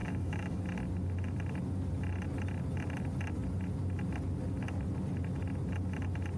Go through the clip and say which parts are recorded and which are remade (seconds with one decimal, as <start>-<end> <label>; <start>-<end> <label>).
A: 0.0-0.6 remade; 0.6-6.4 recorded